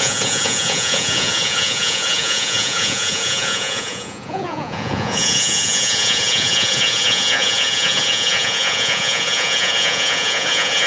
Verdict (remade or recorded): remade